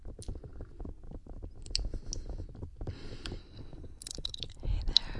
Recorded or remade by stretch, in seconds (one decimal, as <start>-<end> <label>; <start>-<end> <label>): 0.0-3.4 recorded; 3.4-4.4 remade; 4.4-5.2 recorded